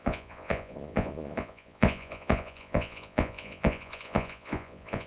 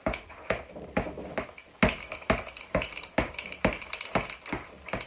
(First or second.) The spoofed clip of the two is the first